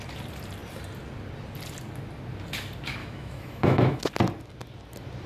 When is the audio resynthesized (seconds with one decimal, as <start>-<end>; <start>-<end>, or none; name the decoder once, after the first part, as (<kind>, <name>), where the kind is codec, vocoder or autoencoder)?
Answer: 3.0-4.0 (autoencoder, DAC-VAE)